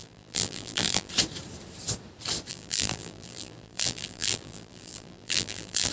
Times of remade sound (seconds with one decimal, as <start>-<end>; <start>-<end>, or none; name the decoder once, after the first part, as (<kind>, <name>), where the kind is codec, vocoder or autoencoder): 0.0-1.1 (vocoder, BigVGAN v2); 2.5-5.9